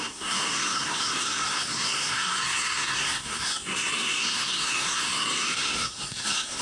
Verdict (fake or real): fake